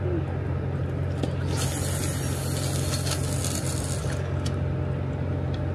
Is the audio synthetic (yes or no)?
no